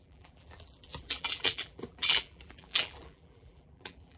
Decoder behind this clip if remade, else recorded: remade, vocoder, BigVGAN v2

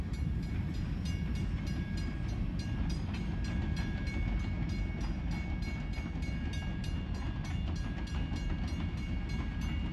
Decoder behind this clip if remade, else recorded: recorded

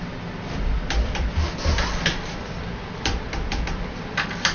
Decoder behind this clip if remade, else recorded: remade, vocoder, BigVGAN v2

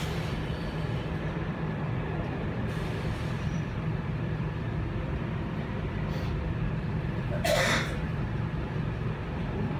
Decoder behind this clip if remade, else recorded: remade, vocoder, BigVGAN v2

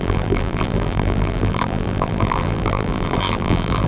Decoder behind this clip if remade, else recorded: remade, vocoder, BigVGAN v2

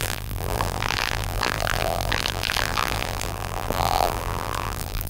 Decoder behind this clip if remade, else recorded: remade, vocoder, BigVGAN v2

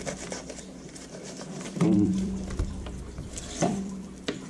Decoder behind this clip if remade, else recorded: remade, vocoder, BigVGAN v2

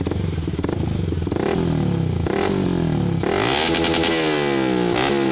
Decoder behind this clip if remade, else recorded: recorded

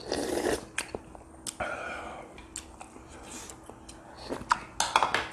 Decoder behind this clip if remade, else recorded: recorded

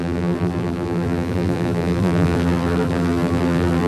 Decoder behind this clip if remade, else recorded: remade, vocoder, BigVGAN v2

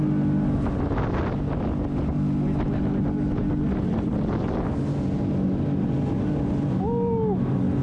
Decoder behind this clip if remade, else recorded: recorded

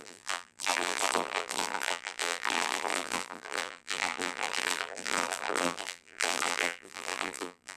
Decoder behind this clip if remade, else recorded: remade, vocoder, BigVGAN v2